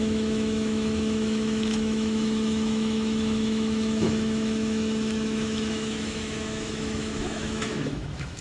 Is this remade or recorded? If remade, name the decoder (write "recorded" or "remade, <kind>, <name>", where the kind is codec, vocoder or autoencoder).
remade, autoencoder, DAC-VAE